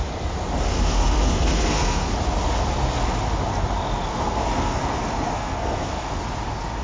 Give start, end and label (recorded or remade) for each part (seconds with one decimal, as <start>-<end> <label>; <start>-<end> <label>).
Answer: 0.0-0.7 recorded; 0.7-2.1 remade; 2.1-4.1 recorded; 4.1-4.8 remade; 4.8-5.3 recorded; 5.3-6.2 remade; 6.2-6.8 recorded